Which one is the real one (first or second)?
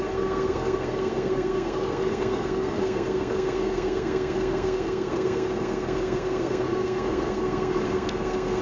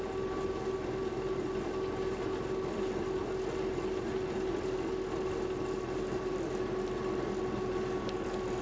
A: second